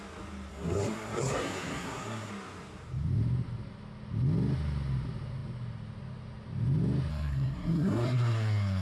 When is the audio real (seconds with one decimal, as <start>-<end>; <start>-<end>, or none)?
0.0-0.5; 2.3-7.1